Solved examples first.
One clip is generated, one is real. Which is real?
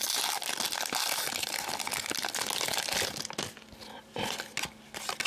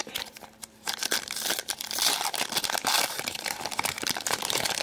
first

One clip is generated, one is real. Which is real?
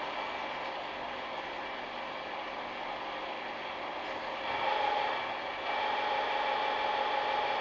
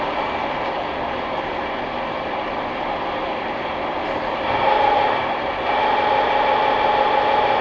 first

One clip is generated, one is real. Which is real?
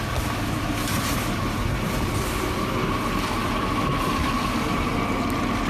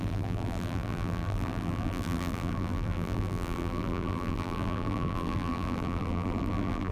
first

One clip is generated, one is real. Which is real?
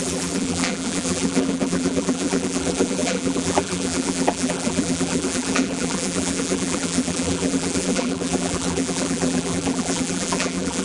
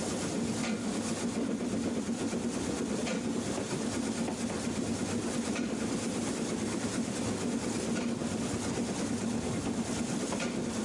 second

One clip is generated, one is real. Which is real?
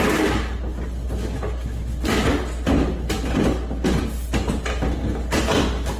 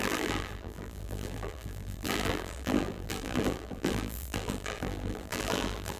first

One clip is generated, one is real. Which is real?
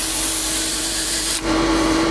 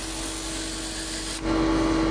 second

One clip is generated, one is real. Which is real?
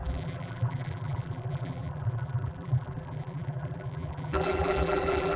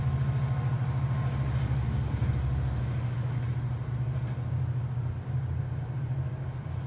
second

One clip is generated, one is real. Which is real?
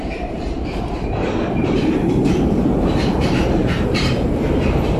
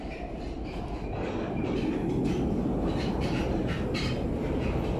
second